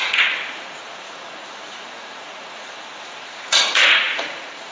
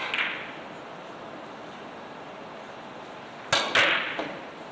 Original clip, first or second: second